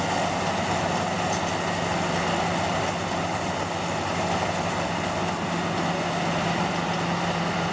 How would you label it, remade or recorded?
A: recorded